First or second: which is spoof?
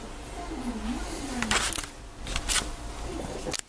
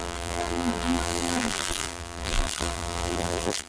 second